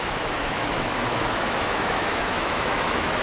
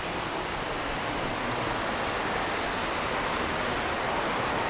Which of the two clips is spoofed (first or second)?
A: first